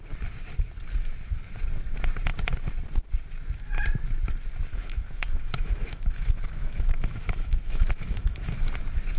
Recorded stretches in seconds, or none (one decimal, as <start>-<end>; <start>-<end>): 0.0-4.7; 8.6-9.2